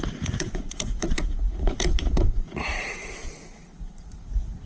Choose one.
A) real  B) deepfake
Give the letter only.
B